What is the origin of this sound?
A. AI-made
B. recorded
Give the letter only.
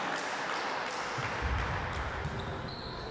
B